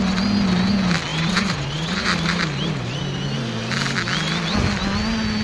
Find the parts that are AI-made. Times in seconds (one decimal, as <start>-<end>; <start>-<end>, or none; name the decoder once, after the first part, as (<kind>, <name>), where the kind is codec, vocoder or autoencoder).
1.1-3.0 (vocoder, BigVGAN v2)